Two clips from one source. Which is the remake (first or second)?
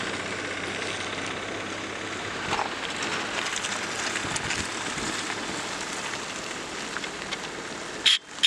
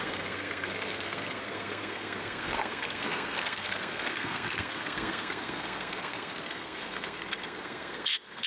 second